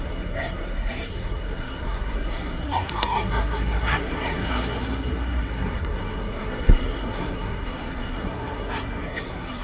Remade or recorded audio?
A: remade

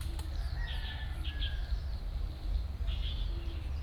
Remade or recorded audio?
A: recorded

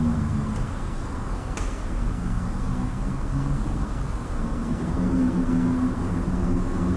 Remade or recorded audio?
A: remade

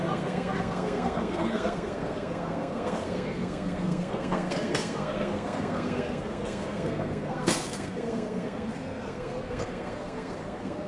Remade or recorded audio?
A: remade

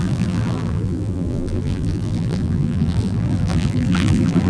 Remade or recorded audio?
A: remade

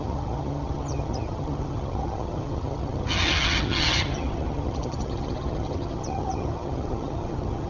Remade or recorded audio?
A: remade